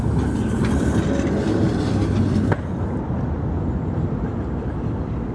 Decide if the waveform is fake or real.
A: real